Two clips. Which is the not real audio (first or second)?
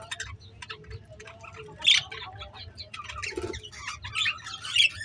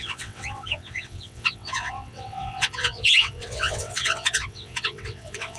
second